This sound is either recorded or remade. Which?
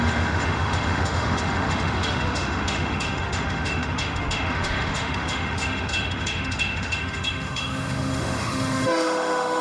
remade